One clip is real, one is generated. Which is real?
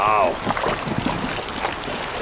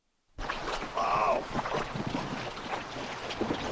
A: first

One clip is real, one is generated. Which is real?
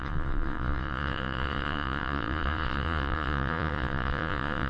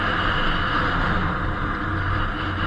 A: second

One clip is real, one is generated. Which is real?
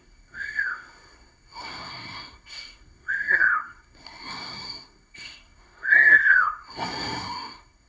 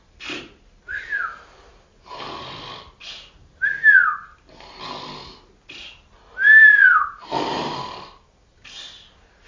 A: second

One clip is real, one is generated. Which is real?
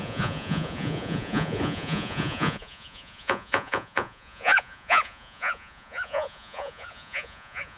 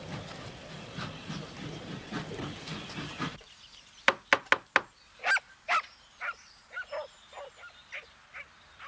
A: second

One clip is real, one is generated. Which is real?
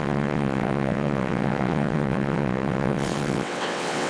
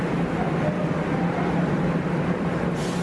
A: second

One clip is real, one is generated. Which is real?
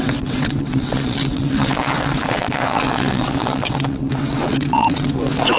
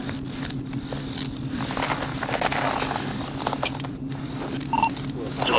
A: second